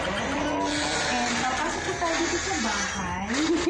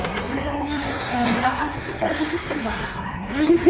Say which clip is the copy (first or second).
second